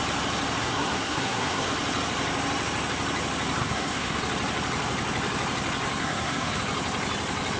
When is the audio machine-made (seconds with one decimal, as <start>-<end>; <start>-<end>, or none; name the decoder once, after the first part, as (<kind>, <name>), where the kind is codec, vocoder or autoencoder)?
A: 0.6-1.7 (codec, SNAC); 3.6-4.2; 6.0-6.6

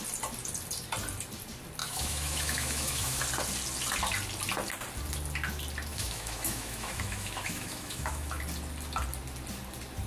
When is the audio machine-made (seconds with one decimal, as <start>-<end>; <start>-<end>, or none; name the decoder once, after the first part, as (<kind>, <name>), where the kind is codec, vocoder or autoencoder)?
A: 1.8-3.2 (autoencoder, DAC-VAE); 5.9-8.4

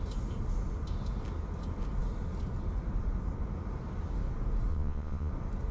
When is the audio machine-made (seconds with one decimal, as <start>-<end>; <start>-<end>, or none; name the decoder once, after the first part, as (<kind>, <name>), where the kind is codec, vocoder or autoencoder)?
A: 4.7-5.3 (vocoder, Vocos)